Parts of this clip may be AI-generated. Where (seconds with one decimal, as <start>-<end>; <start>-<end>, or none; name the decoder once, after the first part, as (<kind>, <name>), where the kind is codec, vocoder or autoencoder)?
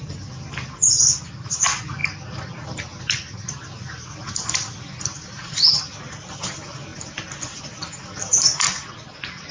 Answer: none